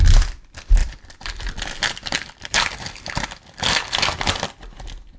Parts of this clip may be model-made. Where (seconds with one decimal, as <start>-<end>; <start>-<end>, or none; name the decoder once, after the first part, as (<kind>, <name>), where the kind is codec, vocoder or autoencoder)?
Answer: 0.8-3.9 (vocoder, BigVGAN v2)